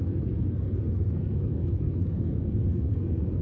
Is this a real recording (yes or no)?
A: no